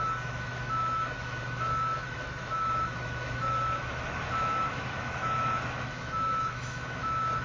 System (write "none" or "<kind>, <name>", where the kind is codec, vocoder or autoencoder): autoencoder, DAC-VAE